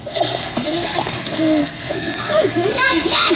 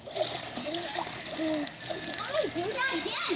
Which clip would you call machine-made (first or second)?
first